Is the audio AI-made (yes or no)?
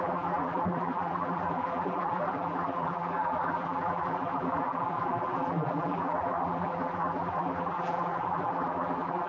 yes